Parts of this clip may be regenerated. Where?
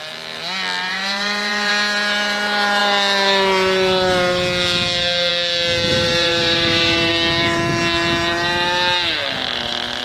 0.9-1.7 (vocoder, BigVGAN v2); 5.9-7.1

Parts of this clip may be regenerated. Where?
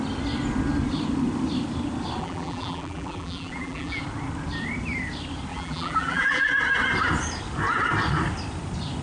2.2-4.0 (vocoder, BigVGAN v2); 5.5-6.5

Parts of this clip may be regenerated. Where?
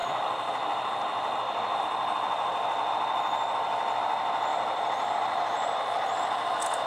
4.5-6.9 (vocoder, BigVGAN v2)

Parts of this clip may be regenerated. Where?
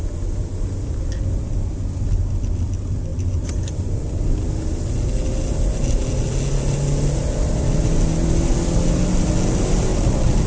3.1-4.1 (vocoder, BigVGAN v2)